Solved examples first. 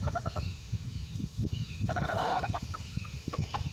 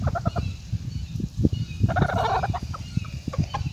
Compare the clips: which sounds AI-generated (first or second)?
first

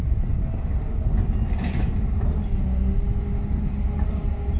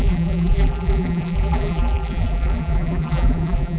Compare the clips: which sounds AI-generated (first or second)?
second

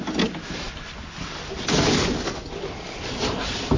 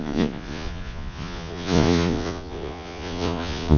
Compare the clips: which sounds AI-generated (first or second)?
second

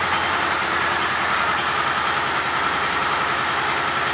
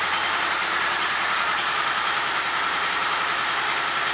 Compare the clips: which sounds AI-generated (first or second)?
second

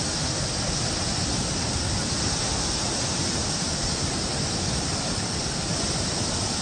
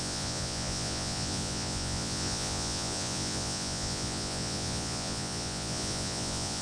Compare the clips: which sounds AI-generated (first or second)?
second